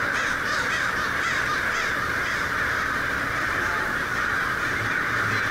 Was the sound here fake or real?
real